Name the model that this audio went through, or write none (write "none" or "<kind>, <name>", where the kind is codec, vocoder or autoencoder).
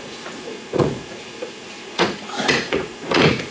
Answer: vocoder, Vocos